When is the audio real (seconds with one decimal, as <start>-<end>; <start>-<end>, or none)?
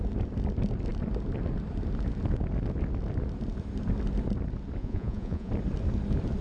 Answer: 0.0-4.8; 5.5-6.4